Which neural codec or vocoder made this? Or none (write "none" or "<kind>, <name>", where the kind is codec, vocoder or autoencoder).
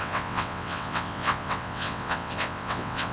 vocoder, WaveNeXt